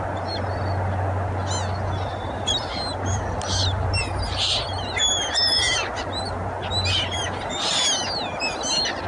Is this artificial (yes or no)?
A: no